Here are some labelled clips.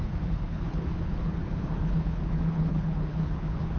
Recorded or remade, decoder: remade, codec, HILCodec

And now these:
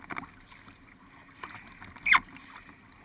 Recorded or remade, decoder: recorded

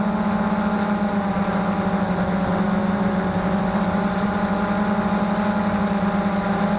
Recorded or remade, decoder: recorded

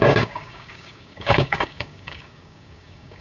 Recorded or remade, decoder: remade, codec, DAC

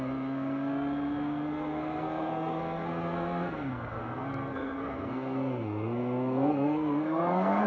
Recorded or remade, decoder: remade, codec, SNAC